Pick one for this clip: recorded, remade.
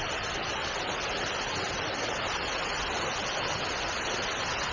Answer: recorded